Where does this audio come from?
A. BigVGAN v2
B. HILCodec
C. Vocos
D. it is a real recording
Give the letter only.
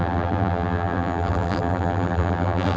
A